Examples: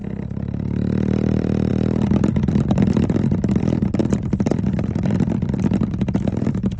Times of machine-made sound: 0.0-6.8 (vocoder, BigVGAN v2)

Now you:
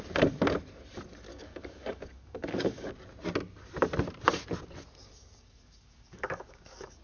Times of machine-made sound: 1.3-2.9 (codec, DAC); 5.0-7.0

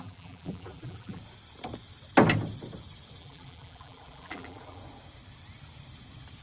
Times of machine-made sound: 0.0-1.2 (vocoder, BigVGAN v2); 3.2-4.8